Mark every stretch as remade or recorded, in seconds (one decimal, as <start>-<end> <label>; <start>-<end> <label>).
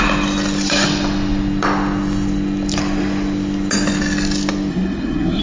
0.0-4.7 recorded; 4.7-5.4 remade